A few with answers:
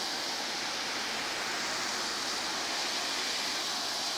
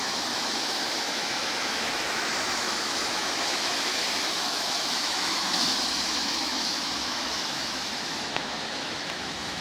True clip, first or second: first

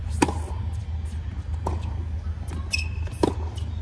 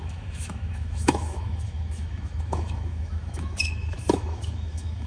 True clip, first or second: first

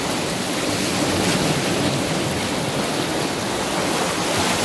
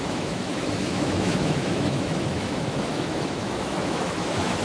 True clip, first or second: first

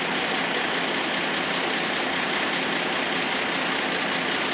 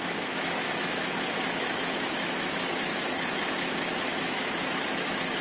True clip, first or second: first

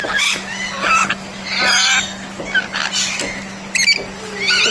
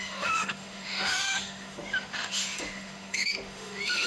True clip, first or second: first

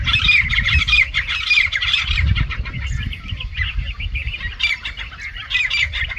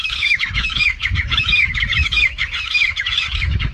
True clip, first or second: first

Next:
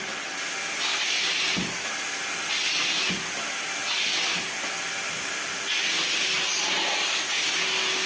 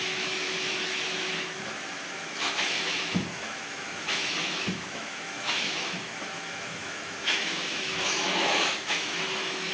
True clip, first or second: first